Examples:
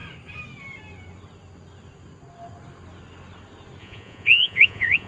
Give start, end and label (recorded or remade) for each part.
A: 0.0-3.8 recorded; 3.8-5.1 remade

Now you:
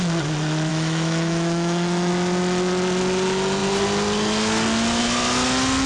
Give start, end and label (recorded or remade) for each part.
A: 0.0-0.7 recorded; 0.7-2.1 remade; 2.1-5.9 recorded

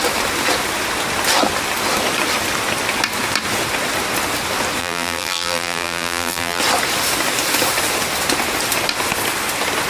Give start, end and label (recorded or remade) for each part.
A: 0.0-4.8 recorded; 4.8-6.6 remade; 6.6-9.9 recorded

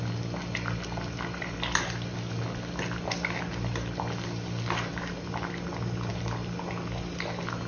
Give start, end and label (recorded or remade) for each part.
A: 0.0-7.7 recorded

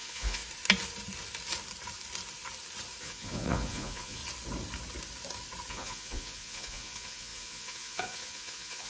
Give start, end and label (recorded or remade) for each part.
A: 0.0-0.4 remade; 0.4-3.0 recorded; 3.0-4.2 remade; 4.2-5.7 recorded; 5.7-8.9 remade

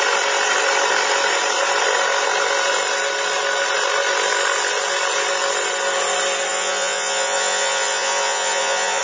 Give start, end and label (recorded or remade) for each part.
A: 0.0-6.5 recorded; 6.5-9.0 remade